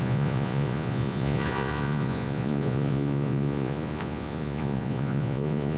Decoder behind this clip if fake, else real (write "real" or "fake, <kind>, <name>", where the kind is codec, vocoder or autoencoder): fake, vocoder, Vocos